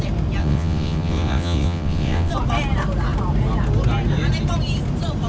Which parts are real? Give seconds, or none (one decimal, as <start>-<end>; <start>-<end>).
0.0-0.4; 2.3-5.3